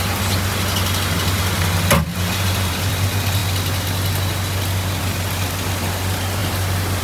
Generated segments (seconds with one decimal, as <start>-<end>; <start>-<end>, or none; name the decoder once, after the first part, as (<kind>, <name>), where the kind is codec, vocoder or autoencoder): 2.1-2.9 (vocoder, BigVGAN v2)